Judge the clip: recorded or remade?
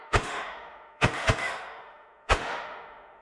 remade